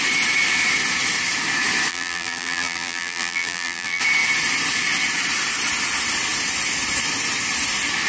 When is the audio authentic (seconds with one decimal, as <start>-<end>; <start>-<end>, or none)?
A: 0.0-1.9; 4.0-8.1

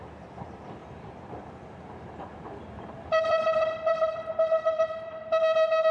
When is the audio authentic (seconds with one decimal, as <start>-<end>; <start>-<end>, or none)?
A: 0.0-0.8; 4.3-5.9